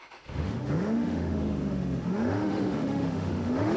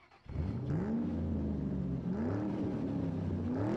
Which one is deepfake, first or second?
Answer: first